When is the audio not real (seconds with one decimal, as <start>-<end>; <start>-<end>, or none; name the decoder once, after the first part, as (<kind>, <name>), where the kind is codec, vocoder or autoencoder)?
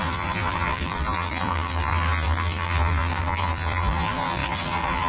0.0-5.1 (vocoder, BigVGAN v2)